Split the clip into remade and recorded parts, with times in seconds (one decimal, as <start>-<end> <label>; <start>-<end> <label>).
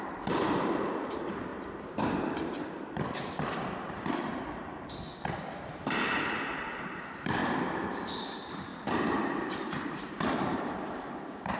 0.0-1.5 remade; 1.5-3.9 recorded; 3.9-5.1 remade; 5.1-6.8 recorded; 6.8-8.7 remade; 8.7-9.4 recorded; 9.4-11.6 remade